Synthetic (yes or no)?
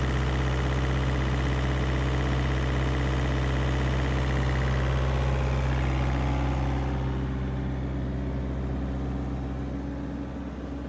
no